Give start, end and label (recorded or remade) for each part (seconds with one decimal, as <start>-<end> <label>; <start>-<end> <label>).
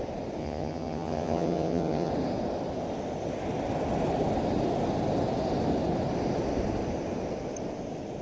0.0-0.4 recorded; 0.4-2.1 remade; 2.1-8.2 recorded